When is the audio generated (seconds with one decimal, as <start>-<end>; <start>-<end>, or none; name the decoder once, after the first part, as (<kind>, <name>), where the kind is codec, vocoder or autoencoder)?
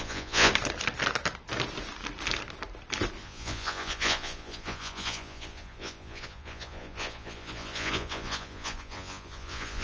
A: 0.0-0.5 (vocoder, Vocos); 3.2-9.8